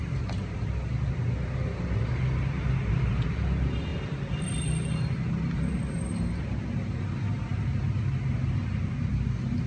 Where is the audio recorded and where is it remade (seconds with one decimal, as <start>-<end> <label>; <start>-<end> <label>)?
0.0-9.7 recorded